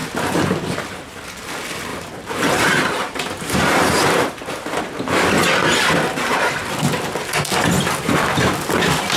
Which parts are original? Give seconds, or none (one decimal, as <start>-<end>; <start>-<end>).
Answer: 0.0-1.9; 4.8-9.2